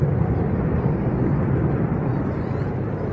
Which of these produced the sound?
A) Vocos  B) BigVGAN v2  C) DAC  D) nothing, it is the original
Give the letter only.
D